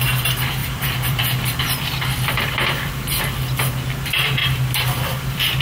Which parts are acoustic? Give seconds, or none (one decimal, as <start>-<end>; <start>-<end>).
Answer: 0.0-0.6; 3.2-4.4